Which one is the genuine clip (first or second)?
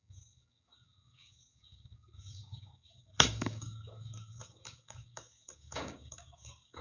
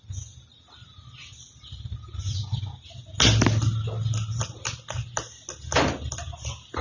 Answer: second